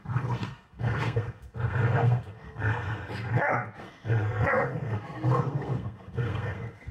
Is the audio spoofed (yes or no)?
yes